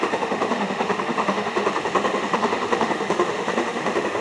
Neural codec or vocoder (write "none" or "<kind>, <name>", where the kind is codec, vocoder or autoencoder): autoencoder, DAC-VAE